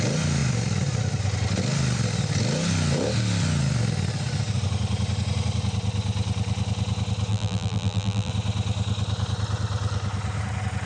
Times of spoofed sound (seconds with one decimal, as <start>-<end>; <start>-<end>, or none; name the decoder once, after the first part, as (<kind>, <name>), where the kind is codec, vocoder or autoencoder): 7.3-8.3 (vocoder, BigVGAN v2)